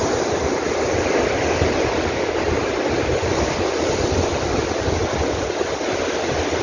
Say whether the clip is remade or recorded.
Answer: recorded